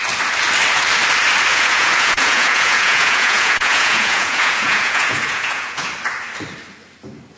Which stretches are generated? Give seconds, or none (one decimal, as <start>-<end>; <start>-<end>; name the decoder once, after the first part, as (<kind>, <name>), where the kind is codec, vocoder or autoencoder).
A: 1.5-5.9 (vocoder, Vocos)